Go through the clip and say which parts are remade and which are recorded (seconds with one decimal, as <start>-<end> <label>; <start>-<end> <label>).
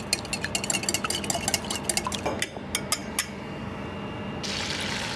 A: 0.0-5.2 recorded